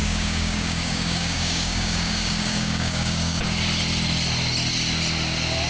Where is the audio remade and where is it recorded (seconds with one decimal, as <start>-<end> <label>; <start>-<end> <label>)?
0.0-3.4 remade; 3.4-5.7 recorded